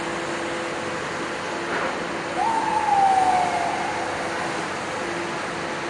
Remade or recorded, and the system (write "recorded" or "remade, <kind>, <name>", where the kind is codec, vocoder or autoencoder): recorded